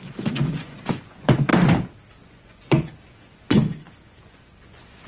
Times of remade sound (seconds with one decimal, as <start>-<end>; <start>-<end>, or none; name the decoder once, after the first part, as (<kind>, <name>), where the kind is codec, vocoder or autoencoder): 0.0-1.5 (vocoder, Vocos); 2.2-5.1